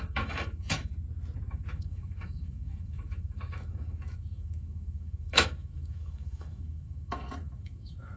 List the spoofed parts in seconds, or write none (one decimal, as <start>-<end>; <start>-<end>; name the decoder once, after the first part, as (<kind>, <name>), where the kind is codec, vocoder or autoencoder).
0.0-0.9 (autoencoder, DAC-VAE); 1.5-8.2

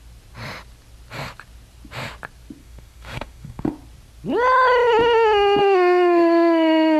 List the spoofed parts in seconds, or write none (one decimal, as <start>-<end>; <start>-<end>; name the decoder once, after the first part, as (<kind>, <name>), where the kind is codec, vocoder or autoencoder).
2.6-3.7 (autoencoder, DAC-VAE); 5.6-7.0

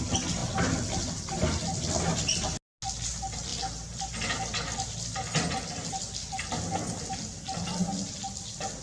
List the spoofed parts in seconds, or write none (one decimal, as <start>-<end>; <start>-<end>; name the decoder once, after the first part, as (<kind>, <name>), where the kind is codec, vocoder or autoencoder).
none

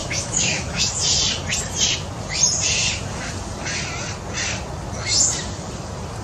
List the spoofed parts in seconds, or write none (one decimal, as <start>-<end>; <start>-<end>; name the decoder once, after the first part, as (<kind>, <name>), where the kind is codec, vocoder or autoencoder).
0.0-0.9 (autoencoder, DAC-VAE)